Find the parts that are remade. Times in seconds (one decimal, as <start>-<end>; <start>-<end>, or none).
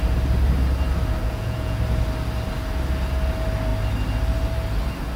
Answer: 1.2-1.8